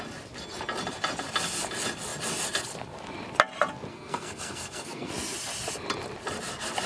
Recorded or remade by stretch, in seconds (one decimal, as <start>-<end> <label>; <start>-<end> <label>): 0.0-3.9 recorded; 3.9-5.1 remade; 5.1-6.9 recorded